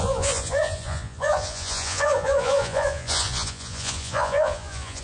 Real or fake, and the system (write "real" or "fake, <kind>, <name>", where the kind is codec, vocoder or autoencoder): fake, vocoder, Vocos